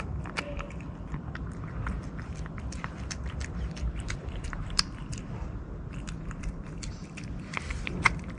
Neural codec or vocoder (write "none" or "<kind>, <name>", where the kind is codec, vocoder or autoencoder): vocoder, BigVGAN v2